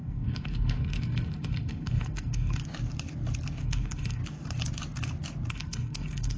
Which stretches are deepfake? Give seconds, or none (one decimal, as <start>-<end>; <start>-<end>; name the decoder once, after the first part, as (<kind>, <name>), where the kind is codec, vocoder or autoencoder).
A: 0.0-2.6 (codec, SNAC); 3.6-4.2; 5.5-6.4